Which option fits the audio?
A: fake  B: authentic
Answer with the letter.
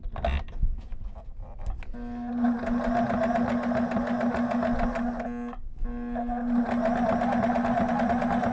B